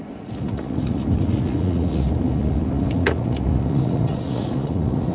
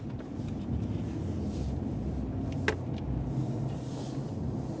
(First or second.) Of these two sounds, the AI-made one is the first